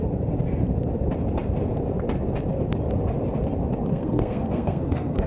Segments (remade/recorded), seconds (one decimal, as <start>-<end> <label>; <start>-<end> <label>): 0.0-3.9 recorded; 3.9-5.3 remade